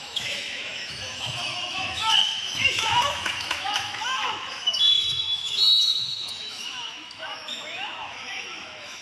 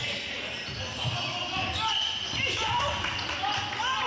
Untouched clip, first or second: second